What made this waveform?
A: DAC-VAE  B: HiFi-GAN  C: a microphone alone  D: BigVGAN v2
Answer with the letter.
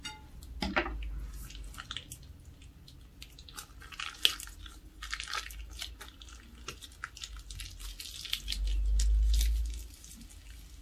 C